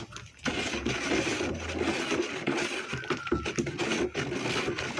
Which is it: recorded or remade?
recorded